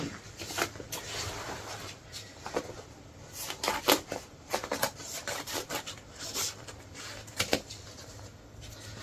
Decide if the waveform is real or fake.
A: fake